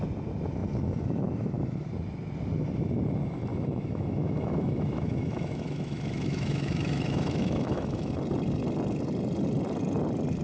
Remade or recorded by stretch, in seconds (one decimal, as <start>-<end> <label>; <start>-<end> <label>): 0.0-3.5 recorded; 3.5-8.1 remade; 8.1-10.4 recorded